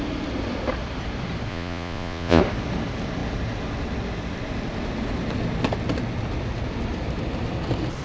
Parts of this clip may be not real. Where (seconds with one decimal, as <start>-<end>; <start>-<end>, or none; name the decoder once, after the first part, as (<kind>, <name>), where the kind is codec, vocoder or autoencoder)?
1.5-2.4 (vocoder, Vocos)